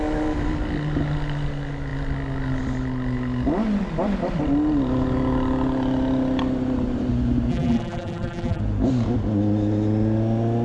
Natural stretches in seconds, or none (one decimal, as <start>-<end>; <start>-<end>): 0.0-7.5; 8.6-10.6

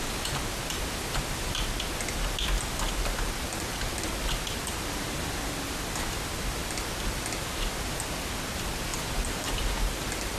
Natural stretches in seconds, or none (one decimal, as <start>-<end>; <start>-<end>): 0.0-8.9; 9.7-10.4

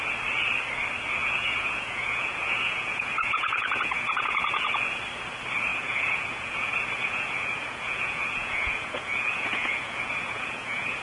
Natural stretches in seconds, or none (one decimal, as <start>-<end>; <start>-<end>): 0.0-1.2; 4.7-5.7